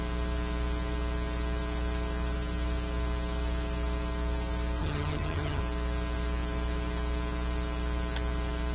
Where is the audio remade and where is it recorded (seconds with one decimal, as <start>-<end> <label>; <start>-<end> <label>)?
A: 0.0-4.8 recorded; 4.8-5.6 remade; 5.6-8.7 recorded